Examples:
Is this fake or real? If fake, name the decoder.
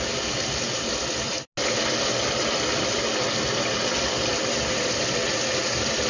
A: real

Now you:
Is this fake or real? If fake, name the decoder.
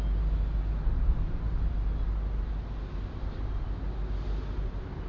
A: real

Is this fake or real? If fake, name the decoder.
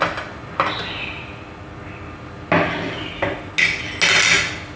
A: real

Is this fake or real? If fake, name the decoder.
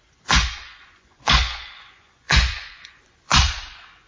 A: fake, vocoder, Vocos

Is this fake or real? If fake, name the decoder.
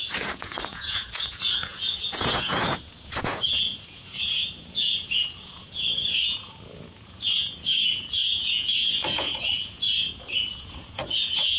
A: fake, vocoder, Vocos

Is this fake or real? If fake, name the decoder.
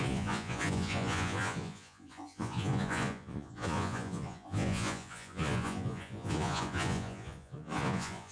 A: fake, vocoder, Vocos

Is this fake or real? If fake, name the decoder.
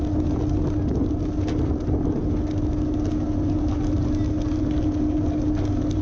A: real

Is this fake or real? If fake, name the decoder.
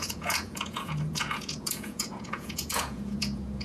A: fake, vocoder, Vocos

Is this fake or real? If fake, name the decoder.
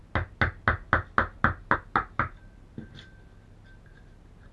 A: real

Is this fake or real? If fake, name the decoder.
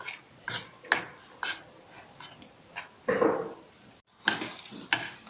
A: real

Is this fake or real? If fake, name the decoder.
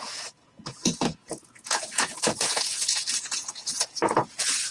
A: fake, vocoder, Vocos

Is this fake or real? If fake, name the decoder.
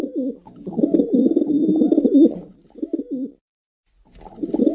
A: real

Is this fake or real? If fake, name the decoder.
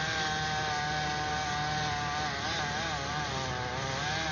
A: real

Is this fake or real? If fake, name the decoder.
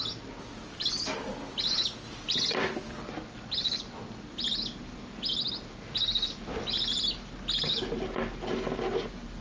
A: real